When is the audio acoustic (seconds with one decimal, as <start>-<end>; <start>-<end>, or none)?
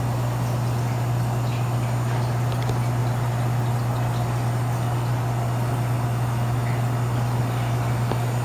0.0-8.4